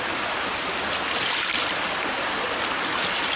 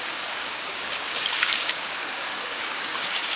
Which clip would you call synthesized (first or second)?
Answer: second